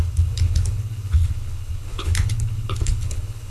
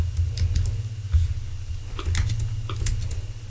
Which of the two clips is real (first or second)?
second